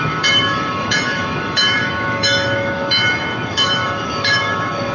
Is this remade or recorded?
remade